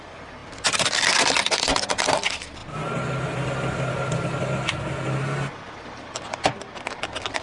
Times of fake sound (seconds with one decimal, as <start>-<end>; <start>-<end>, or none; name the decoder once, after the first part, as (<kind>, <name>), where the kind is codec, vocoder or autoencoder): none